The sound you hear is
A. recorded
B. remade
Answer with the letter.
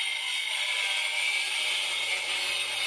B